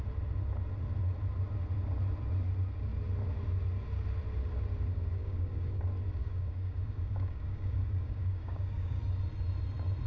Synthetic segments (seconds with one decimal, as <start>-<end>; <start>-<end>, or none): 4.9-5.8; 6.2-9.0